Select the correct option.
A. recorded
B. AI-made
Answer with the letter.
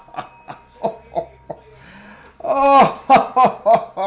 A